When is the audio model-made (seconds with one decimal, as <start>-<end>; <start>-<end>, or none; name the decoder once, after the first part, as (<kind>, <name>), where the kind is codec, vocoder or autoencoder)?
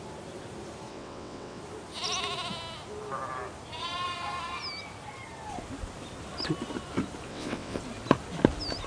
0.9-1.6 (vocoder, WaveNeXt); 7.3-7.8